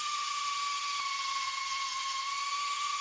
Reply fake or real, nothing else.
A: fake